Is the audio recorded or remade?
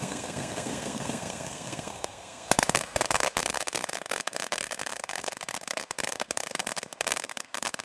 remade